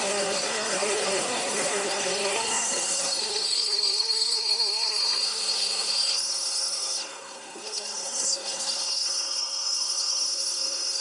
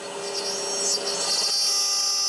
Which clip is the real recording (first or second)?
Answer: second